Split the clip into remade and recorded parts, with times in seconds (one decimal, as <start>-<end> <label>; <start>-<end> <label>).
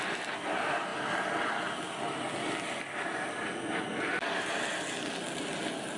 0.0-6.0 recorded